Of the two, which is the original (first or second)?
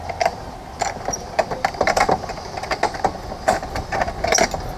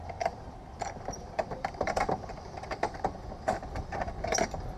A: first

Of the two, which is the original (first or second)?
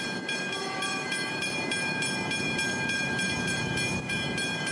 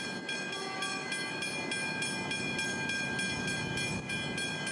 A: second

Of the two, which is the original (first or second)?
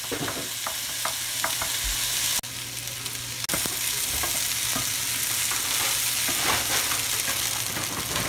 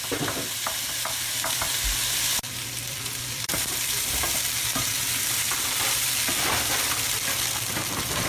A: first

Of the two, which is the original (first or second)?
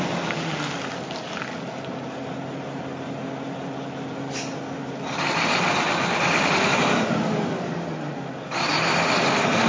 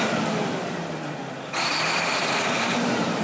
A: first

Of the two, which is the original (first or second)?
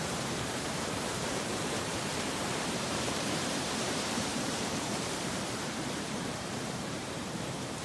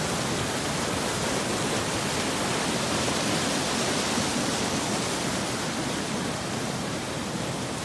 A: second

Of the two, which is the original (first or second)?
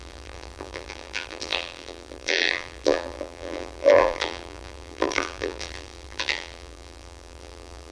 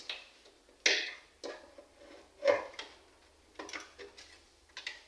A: second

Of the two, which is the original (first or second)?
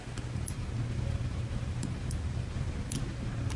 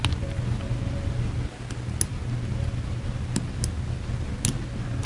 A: second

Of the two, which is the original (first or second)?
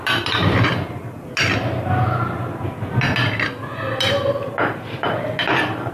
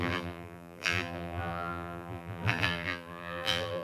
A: first